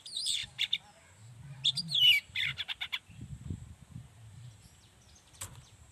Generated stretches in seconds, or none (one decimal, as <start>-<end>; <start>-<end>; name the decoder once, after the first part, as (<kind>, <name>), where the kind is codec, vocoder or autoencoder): none